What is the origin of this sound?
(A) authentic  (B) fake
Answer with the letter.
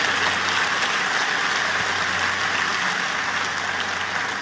A